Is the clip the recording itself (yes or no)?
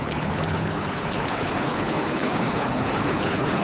no